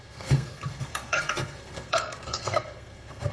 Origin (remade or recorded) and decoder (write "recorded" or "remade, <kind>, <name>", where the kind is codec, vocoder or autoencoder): remade, codec, SNAC